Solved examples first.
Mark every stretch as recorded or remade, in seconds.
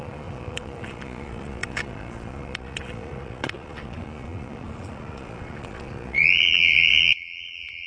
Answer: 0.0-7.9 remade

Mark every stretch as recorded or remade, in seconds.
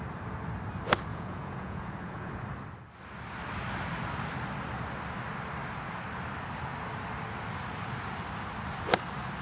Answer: 0.0-1.1 recorded; 1.1-2.3 remade; 2.3-9.4 recorded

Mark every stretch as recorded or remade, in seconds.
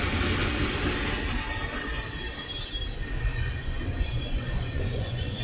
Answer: 0.0-3.3 recorded; 3.3-5.4 remade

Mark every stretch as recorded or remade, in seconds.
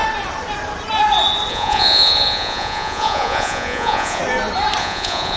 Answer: 0.0-1.5 recorded; 1.5-4.2 remade; 4.2-4.8 recorded; 4.8-5.4 remade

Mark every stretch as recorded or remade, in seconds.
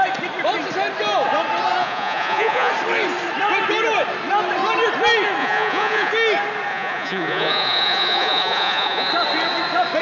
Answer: 0.0-1.8 recorded; 1.8-2.7 remade; 2.7-5.4 recorded; 5.4-6.1 remade; 6.1-6.7 recorded; 6.7-9.1 remade; 9.1-10.0 recorded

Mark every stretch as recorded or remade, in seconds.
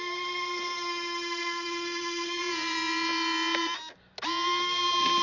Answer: 0.0-1.4 recorded; 1.4-2.4 remade; 2.4-5.2 recorded